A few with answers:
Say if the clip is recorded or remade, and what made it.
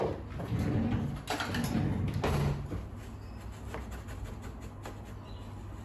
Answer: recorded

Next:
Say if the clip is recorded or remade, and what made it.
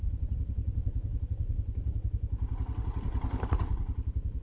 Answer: recorded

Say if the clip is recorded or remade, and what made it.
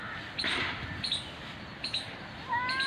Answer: recorded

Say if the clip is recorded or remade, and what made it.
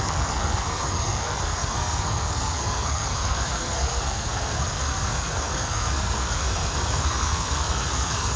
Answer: remade, codec, SNAC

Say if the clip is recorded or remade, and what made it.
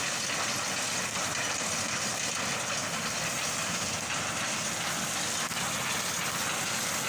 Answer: recorded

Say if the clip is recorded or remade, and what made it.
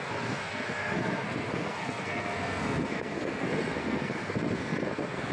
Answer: remade, codec, SNAC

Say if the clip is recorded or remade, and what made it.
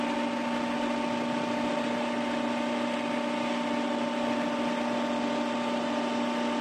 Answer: recorded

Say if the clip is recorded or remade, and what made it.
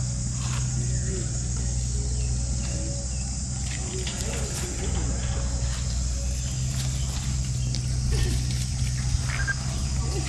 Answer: recorded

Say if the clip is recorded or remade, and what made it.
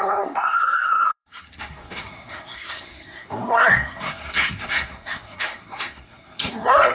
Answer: remade, codec, SNAC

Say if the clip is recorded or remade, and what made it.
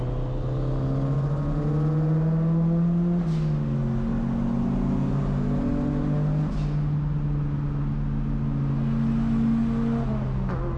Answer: recorded